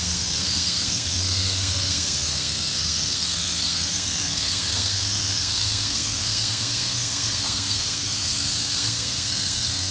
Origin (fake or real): fake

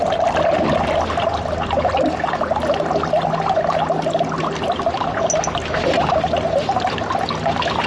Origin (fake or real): real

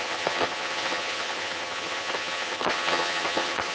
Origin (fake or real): fake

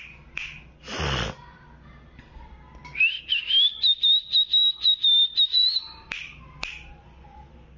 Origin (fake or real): real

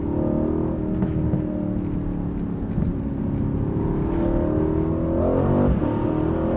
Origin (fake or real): real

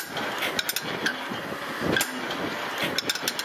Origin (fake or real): real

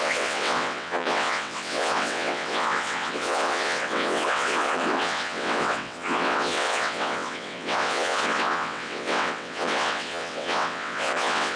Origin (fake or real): fake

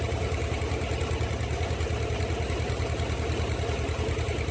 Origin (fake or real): real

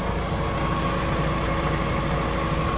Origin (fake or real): real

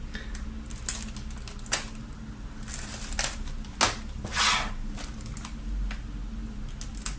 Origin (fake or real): real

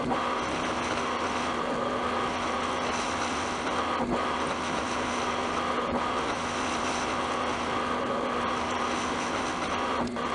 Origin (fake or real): real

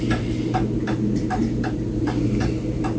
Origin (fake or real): real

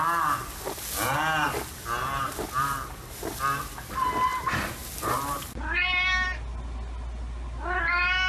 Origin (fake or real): real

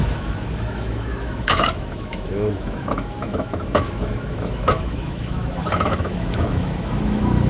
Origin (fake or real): fake